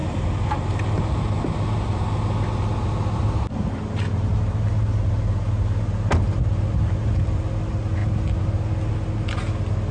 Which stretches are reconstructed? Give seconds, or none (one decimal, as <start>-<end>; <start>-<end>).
none